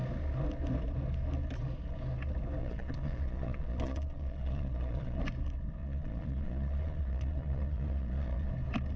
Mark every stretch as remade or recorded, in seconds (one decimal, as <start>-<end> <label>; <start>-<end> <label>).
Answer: 0.0-2.6 recorded; 2.6-5.2 remade; 5.2-5.8 recorded; 5.8-8.5 remade; 8.5-9.0 recorded